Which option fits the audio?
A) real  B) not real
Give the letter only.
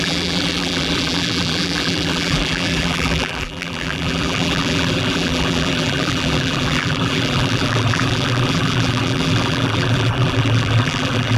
B